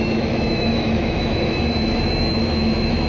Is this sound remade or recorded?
remade